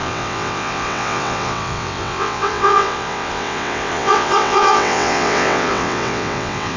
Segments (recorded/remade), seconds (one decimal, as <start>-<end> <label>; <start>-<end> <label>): 0.0-6.8 remade